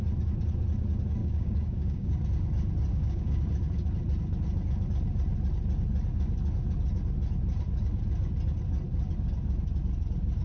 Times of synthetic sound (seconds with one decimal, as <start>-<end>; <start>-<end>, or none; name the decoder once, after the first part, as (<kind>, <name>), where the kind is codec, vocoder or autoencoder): 1.2-2.2 (codec, DAC); 2.9-3.4

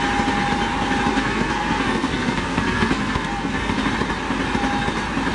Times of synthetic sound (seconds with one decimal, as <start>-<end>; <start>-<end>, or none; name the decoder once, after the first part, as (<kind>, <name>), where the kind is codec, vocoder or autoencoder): 1.1-3.8 (codec, SNAC)

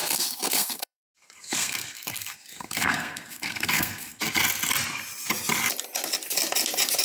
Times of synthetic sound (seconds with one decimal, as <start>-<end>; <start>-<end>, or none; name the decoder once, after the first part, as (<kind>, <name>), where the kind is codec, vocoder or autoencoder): 0.0-4.2 (codec, SNAC)

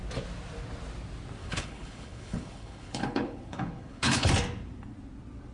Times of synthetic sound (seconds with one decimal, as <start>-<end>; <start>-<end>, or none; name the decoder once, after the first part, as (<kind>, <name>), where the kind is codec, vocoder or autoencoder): 1.4-4.3 (codec, HILCodec)